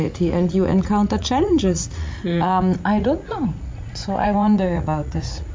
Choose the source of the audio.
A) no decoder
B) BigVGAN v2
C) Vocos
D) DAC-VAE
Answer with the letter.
C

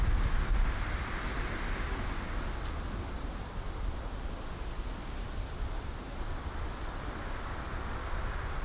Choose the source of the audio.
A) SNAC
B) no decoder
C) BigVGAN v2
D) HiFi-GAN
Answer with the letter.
B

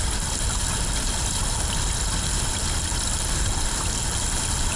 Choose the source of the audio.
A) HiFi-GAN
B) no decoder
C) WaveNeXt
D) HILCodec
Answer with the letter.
B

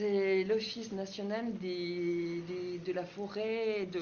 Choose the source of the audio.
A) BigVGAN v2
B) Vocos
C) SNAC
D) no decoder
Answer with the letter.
D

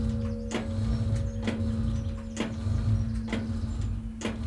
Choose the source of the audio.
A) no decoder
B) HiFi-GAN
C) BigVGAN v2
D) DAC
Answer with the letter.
A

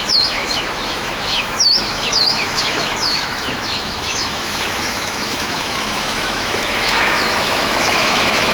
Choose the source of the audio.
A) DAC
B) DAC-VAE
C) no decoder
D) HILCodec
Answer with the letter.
B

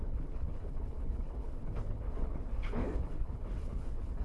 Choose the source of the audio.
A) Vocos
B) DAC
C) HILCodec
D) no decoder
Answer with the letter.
C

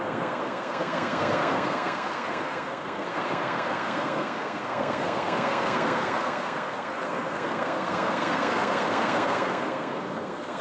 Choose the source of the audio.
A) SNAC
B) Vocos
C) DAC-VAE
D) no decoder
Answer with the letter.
A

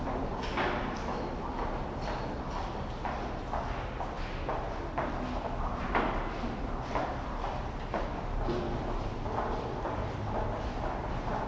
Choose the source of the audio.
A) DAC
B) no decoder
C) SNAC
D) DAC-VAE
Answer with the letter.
B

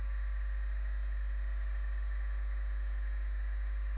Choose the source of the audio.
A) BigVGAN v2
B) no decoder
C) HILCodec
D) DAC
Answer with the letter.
B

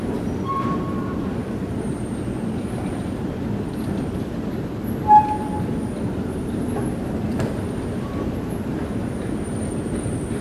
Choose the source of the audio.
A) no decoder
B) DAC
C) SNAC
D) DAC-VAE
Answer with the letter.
A